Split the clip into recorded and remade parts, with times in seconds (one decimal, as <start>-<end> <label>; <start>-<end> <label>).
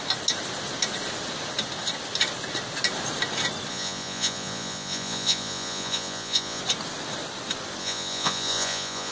0.0-3.7 recorded; 3.7-6.6 remade; 6.6-7.8 recorded; 7.8-9.1 remade